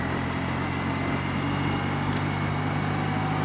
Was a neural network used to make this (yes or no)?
no